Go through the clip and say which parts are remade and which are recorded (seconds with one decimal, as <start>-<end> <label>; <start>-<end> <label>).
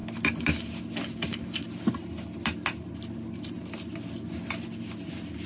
0.0-5.5 recorded